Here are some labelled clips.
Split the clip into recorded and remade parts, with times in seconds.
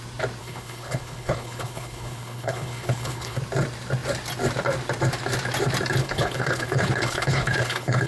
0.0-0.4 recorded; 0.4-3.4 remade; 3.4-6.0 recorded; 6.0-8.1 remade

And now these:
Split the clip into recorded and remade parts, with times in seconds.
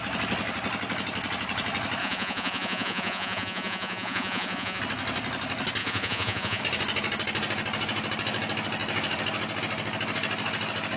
0.0-2.0 recorded; 2.0-4.8 remade; 4.8-5.8 recorded; 5.8-6.6 remade; 6.6-11.0 recorded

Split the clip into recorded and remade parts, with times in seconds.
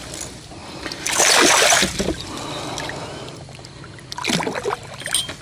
0.0-0.6 recorded; 0.6-3.8 remade; 3.8-5.4 recorded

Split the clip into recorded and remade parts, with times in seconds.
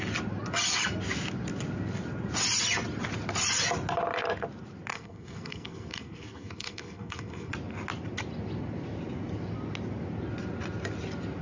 0.0-4.9 recorded; 4.9-7.5 remade; 7.5-11.4 recorded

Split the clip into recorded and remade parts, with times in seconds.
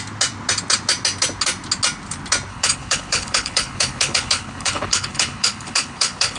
0.0-2.5 recorded; 2.5-6.4 remade